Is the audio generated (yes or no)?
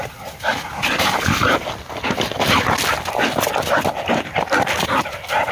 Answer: no